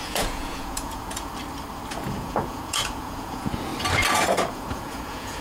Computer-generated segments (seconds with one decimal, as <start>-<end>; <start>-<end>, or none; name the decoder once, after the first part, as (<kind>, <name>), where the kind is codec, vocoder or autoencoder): 0.0-1.3 (vocoder, Vocos); 1.9-3.7; 4.5-5.4